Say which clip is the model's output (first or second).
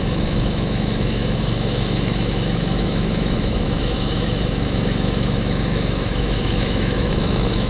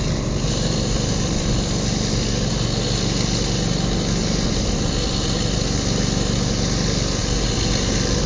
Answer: first